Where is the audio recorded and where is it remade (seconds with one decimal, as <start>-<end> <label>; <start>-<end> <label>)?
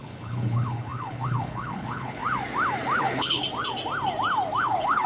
0.0-2.2 remade; 2.2-3.0 recorded; 3.0-3.4 remade; 3.4-4.6 recorded; 4.6-5.1 remade